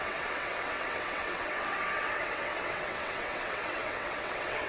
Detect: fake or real fake